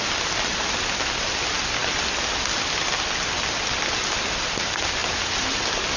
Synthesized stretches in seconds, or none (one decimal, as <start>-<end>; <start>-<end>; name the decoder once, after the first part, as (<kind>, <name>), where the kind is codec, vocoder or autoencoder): none

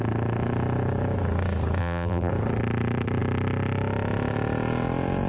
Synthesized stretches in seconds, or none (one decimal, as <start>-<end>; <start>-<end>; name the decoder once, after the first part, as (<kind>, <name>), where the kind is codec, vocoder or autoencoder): 1.8-2.3 (vocoder, BigVGAN v2)

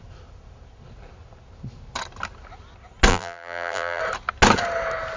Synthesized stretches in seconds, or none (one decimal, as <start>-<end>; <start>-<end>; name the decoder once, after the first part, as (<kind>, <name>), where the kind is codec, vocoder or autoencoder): 3.1-4.0 (vocoder, BigVGAN v2)

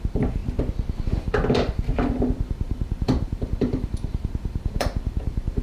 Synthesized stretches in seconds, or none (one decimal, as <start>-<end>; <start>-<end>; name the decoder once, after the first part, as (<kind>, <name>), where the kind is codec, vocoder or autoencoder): 0.0-0.4 (vocoder, BigVGAN v2); 1.0-5.6

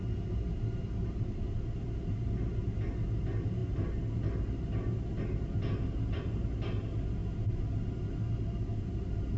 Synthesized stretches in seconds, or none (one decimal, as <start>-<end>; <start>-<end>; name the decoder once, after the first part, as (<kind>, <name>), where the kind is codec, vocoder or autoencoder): none

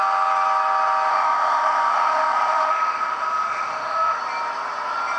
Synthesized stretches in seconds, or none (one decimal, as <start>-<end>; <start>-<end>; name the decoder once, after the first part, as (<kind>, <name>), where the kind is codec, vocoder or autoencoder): 1.1-4.2 (autoencoder, DAC-VAE)